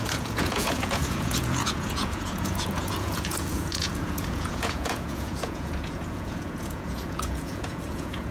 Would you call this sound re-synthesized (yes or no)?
yes